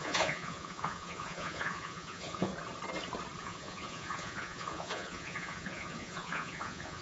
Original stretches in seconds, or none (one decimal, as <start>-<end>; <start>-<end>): 2.5-3.4